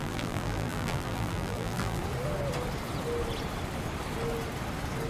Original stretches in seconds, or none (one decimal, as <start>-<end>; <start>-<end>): 2.0-5.1